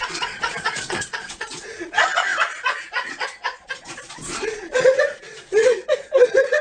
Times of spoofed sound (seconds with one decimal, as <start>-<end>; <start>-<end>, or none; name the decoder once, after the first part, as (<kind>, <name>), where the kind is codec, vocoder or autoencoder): 0.0-6.6 (vocoder, Vocos)